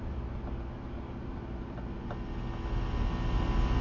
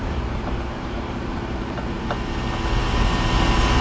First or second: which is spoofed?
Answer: second